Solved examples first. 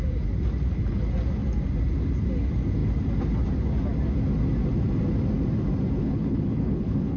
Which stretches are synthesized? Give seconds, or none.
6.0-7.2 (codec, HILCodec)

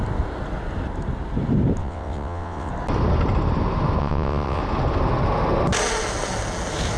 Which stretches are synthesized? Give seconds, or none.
1.8-2.7 (vocoder, WaveNeXt); 4.0-4.6

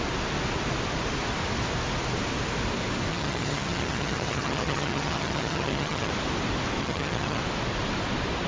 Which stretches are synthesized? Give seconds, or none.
3.1-6.1 (vocoder, HiFi-GAN); 6.8-7.4